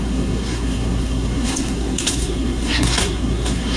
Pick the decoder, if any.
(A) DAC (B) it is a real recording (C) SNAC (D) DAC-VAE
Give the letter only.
C